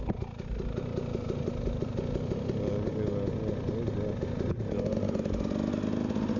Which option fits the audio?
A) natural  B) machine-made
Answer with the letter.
A